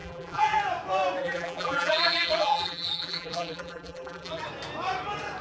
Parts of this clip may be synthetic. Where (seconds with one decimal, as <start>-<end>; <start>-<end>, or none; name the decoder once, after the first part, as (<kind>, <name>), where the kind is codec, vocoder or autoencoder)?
0.0-0.6 (vocoder, BigVGAN v2); 1.2-4.4